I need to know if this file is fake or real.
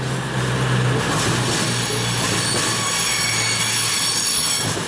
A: real